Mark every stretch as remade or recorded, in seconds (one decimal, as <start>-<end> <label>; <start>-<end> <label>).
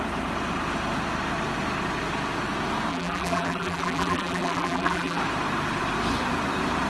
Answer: 0.0-2.9 recorded; 2.9-5.2 remade; 5.2-6.9 recorded